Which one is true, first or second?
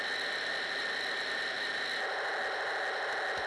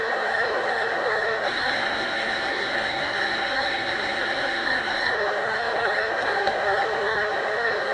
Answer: first